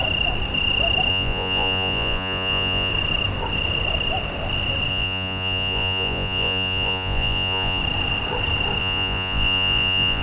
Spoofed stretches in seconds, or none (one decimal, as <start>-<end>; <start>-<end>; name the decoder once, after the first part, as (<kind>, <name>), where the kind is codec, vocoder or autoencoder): 1.1-2.9 (vocoder, Vocos); 4.9-7.8; 8.8-10.2